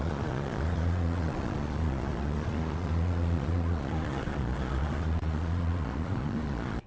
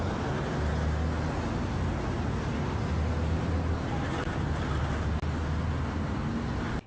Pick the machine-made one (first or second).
first